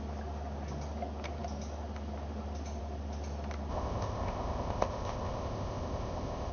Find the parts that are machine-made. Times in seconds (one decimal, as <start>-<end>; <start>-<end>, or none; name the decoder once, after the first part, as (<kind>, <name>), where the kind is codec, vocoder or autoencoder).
3.7-6.5 (codec, ZipCodec)

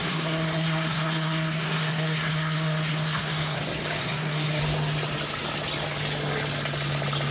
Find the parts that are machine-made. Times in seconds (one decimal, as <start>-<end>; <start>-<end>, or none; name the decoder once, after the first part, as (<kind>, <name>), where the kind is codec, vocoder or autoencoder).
0.0-3.6 (codec, SNAC); 4.0-4.6

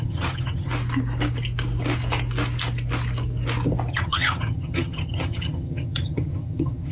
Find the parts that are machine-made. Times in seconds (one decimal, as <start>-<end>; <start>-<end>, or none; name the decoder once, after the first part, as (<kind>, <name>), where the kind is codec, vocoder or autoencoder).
0.0-0.7 (vocoder, HiFi-GAN); 3.9-6.9

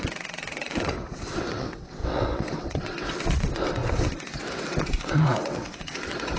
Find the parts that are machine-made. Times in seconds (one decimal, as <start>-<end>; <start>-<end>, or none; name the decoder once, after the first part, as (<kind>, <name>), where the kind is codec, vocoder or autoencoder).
0.0-6.4 (vocoder, WaveNeXt)

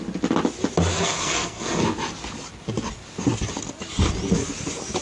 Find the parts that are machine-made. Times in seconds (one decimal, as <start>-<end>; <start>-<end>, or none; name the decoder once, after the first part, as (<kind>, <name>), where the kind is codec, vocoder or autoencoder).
0.9-1.8 (codec, SNAC)

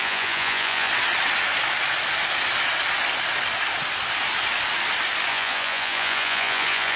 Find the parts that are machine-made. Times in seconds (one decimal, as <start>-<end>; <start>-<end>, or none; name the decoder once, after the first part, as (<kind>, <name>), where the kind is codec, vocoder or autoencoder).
0.0-0.9 (vocoder, Vocos); 5.3-7.0

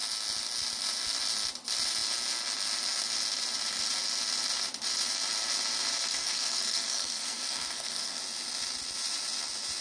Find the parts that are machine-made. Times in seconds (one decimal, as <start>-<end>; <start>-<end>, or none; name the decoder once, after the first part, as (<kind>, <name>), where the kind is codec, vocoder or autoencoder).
6.1-8.2 (codec, SNAC)

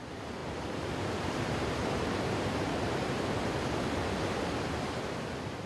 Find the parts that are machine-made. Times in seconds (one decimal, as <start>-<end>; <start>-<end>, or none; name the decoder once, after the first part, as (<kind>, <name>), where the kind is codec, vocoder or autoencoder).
0.4-3.6 (vocoder, BigVGAN v2)